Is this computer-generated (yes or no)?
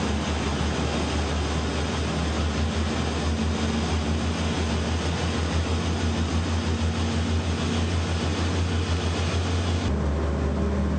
no